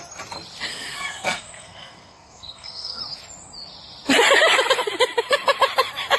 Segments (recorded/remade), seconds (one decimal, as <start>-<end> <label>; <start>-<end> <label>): 0.0-0.7 recorded; 0.7-3.0 remade; 3.0-6.2 recorded